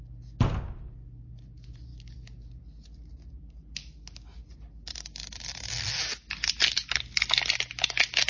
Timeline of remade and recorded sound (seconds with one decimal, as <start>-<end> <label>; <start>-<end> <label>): 0.0-8.3 recorded